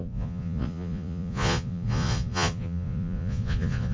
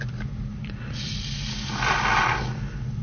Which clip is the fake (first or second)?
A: first